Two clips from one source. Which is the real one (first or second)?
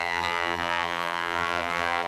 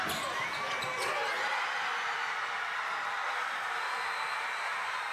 second